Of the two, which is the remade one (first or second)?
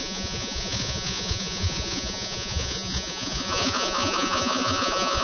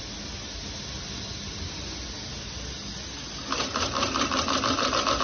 first